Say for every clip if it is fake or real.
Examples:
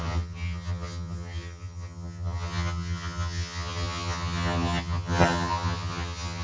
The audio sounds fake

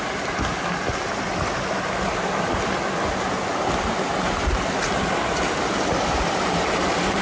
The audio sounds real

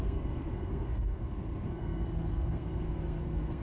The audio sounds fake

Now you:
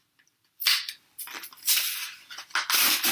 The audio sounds real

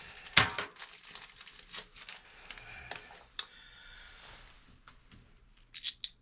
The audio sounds real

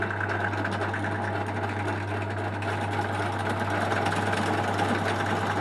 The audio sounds real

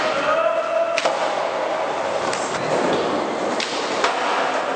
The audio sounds real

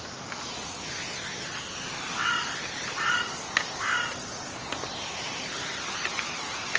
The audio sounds real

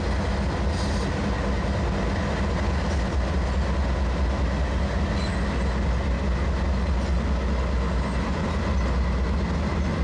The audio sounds real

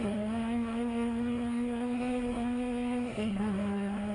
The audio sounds fake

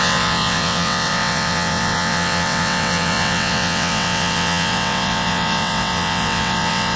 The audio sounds fake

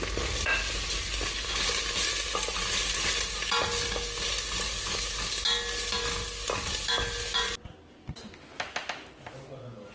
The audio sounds real